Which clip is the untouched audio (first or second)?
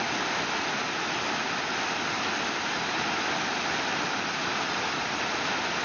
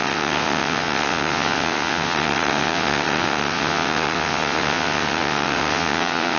first